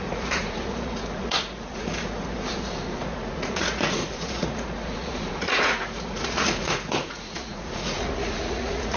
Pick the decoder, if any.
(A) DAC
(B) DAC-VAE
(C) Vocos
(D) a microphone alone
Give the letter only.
C